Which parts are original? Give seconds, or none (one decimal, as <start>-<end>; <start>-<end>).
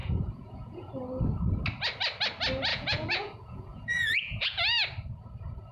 0.9-2.7; 4.6-5.7